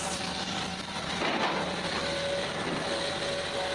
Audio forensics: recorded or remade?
recorded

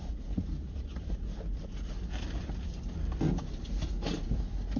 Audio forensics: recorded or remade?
recorded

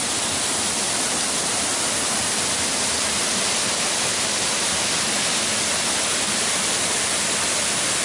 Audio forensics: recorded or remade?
recorded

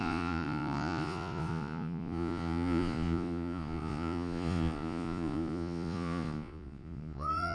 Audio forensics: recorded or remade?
remade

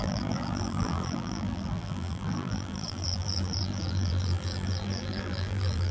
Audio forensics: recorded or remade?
remade